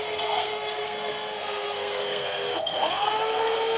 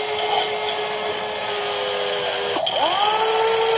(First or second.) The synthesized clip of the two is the first